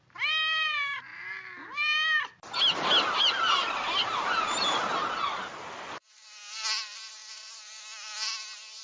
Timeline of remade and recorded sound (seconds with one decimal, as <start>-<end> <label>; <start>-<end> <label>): 0.0-8.8 recorded